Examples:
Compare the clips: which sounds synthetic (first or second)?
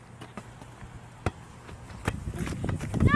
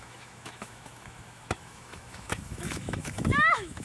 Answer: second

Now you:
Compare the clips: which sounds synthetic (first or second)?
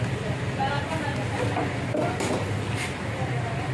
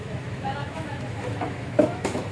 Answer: second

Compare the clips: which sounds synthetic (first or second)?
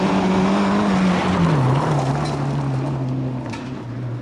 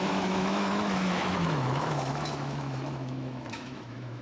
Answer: second